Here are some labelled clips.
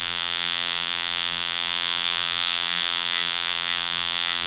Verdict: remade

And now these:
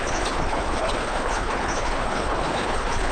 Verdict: remade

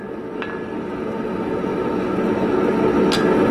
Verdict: recorded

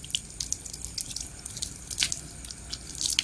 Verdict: recorded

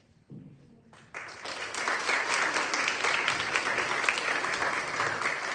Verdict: recorded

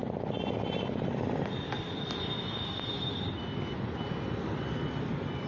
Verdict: recorded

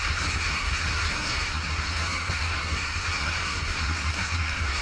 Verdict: remade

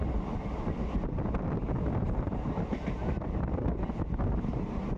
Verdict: recorded